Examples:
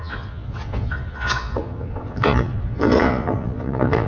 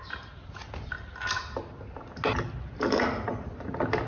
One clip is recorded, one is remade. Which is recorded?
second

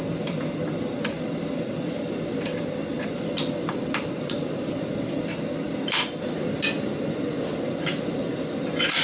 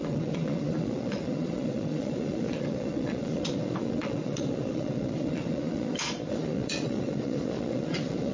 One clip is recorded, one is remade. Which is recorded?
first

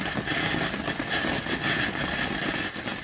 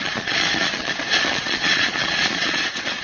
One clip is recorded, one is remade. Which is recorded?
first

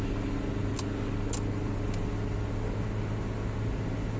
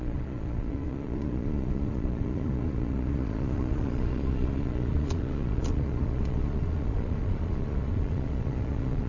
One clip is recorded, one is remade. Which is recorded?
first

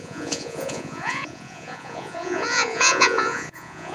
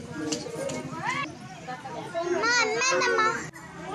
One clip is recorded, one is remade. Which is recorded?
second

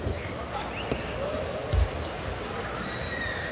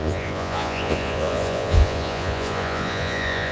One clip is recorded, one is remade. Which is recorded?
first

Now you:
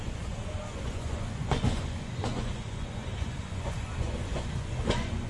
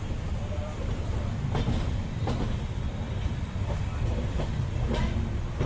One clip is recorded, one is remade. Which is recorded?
second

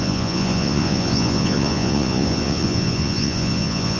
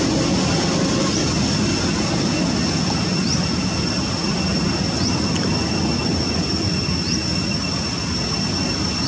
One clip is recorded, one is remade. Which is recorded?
second